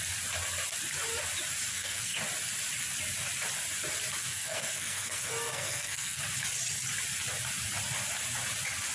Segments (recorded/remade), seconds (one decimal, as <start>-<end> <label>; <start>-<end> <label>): 0.0-1.7 recorded; 1.7-2.2 remade; 2.2-4.2 recorded; 4.2-6.2 remade; 6.2-8.9 recorded